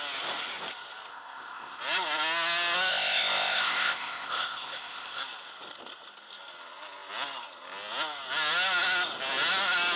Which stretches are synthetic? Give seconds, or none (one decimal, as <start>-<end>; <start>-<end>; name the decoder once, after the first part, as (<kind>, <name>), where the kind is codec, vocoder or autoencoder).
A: 1.1-1.8 (codec, ZipCodec); 2.9-5.2